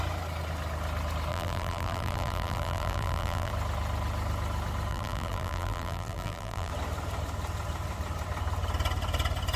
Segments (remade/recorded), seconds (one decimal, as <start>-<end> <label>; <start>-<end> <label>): 0.0-1.3 recorded; 1.3-3.5 remade; 3.5-4.9 recorded; 4.9-6.7 remade; 6.7-9.6 recorded